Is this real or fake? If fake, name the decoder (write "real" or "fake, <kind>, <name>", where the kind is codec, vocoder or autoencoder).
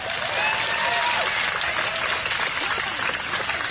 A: real